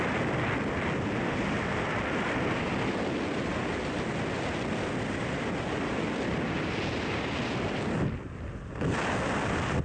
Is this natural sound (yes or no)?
yes